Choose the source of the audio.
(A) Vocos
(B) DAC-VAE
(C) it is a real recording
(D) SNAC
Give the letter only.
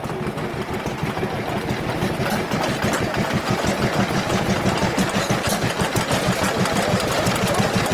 C